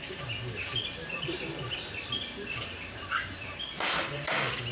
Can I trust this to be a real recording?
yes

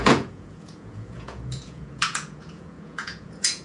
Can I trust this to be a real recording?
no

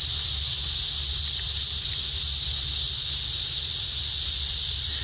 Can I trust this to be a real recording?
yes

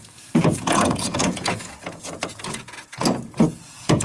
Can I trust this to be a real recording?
no